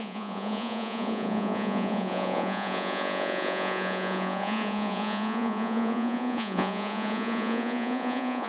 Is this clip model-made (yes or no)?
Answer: yes